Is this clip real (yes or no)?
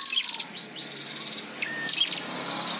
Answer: yes